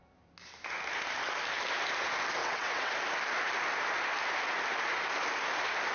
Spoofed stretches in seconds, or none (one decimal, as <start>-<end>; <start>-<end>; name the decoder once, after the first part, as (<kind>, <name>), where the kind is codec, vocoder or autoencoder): 2.4-2.9 (vocoder, WaveNeXt)

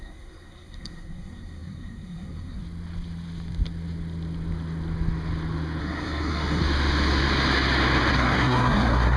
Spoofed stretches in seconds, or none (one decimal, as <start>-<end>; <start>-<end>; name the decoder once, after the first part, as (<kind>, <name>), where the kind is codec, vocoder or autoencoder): 0.0-2.6 (codec, SNAC); 5.8-6.6; 8.1-9.2

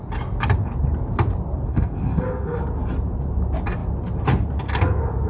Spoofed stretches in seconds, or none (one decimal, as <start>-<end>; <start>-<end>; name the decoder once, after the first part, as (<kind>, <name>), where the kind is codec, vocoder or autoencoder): 1.7-2.6 (codec, SNAC)

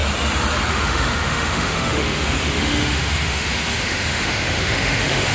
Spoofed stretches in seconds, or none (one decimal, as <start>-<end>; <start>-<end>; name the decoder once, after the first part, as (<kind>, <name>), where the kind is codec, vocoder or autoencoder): 0.7-5.3 (autoencoder, DAC-VAE)

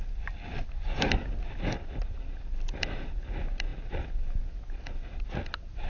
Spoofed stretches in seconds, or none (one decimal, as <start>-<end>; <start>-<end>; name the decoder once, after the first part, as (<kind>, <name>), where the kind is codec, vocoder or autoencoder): none

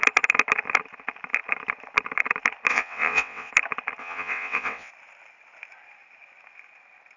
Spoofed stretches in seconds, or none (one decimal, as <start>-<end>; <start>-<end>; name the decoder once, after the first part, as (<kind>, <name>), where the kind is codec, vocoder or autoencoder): 2.7-3.5 (vocoder, WaveNeXt); 4.0-4.9